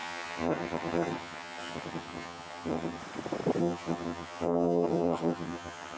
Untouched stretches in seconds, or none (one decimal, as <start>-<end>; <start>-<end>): 3.0-3.6

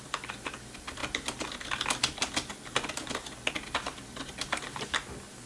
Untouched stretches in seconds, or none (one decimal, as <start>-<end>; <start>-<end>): 0.0-5.5

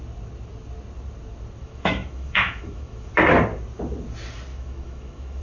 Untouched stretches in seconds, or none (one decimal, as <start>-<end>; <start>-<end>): 0.0-1.6; 3.1-4.5

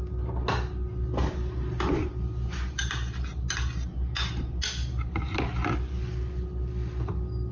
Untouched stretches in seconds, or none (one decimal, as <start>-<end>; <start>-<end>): 0.0-7.5

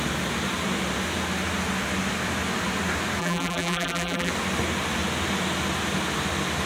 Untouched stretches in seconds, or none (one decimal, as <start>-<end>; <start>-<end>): 0.0-3.2; 4.3-6.7

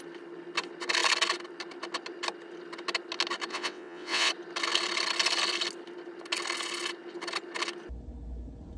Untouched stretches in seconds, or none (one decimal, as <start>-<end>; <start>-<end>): 0.0-3.5; 4.3-8.8